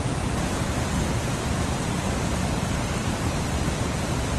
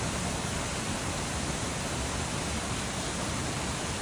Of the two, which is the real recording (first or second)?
second